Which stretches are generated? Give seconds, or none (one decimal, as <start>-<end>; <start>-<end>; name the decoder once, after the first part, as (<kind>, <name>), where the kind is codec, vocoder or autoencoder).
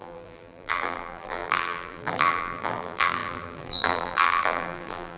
0.0-5.2 (vocoder, BigVGAN v2)